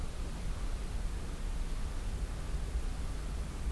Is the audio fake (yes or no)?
no